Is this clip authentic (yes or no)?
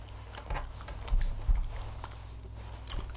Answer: yes